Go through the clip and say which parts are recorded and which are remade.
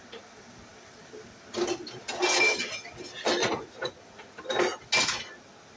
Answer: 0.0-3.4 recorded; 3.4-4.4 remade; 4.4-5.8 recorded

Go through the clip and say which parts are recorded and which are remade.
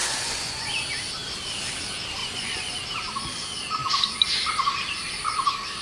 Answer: 0.0-0.7 remade; 0.7-2.2 recorded; 2.2-2.7 remade; 2.7-5.8 recorded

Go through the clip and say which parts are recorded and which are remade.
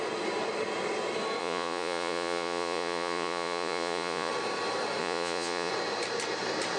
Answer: 0.0-1.4 recorded; 1.4-4.3 remade; 4.3-5.0 recorded; 5.0-5.7 remade; 5.7-6.8 recorded